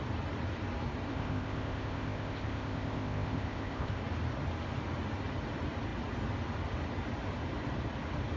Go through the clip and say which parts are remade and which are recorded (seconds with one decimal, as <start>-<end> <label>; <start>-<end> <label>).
0.0-1.1 recorded; 1.1-4.0 remade; 4.0-8.4 recorded